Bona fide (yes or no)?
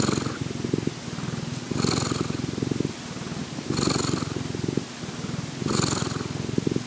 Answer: yes